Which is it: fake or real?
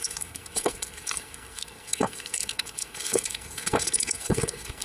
fake